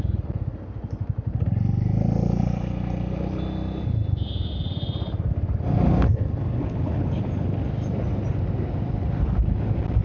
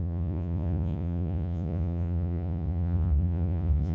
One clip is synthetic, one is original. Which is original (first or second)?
first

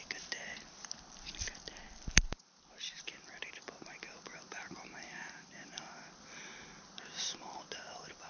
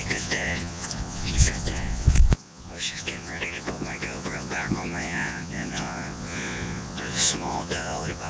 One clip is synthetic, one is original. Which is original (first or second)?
first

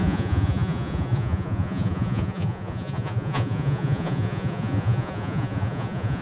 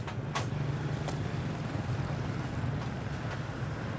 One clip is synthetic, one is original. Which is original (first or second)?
second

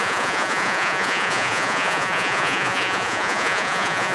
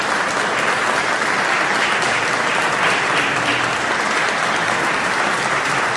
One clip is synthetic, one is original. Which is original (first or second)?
second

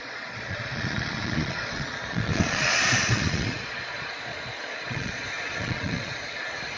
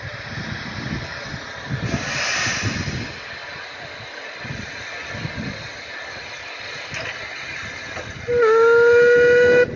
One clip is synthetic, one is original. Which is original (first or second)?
second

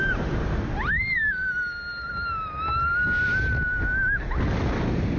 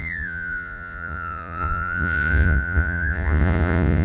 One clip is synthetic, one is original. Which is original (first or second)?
first